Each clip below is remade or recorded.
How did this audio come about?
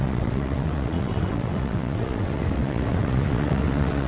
remade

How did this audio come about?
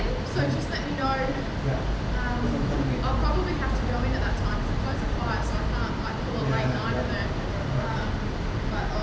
recorded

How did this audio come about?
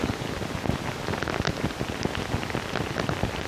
recorded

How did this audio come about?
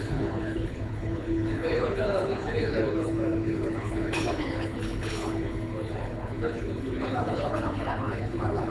remade